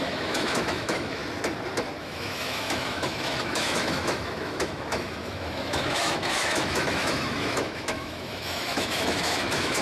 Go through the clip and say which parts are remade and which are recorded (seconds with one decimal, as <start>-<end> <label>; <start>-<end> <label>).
0.0-1.2 remade; 1.2-2.0 recorded; 2.0-9.8 remade